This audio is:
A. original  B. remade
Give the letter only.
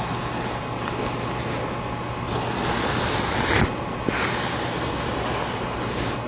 A